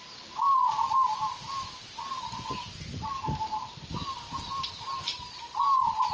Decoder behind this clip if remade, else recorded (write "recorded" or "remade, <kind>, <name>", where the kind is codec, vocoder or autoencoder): remade, vocoder, BigVGAN v2